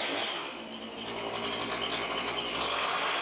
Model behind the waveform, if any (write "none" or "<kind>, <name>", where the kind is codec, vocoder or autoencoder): none